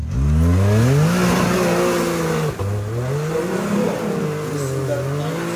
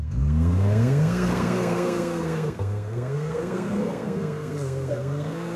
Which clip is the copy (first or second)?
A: second